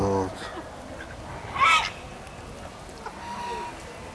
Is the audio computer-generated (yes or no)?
no